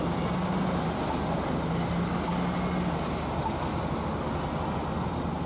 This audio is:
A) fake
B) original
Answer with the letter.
B